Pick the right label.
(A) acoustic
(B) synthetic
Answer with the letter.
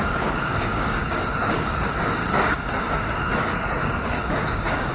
B